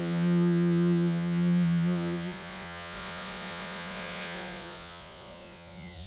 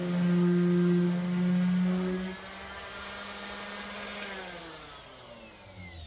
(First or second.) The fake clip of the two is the first